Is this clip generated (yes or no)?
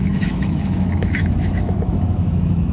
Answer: yes